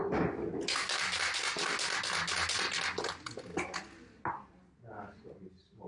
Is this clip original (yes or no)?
yes